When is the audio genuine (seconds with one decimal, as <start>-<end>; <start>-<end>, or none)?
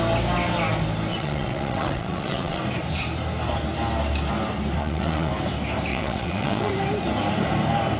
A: 0.0-1.1; 2.6-4.8; 5.3-5.9; 6.7-8.0